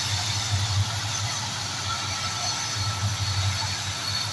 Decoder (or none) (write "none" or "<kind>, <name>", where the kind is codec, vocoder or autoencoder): none